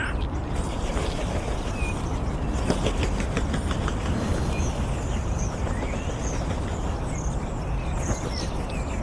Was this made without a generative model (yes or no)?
yes